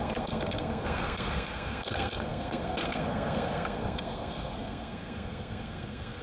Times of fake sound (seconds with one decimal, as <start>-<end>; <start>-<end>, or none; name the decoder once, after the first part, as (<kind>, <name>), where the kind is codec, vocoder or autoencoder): 0.0-6.2 (codec, SNAC)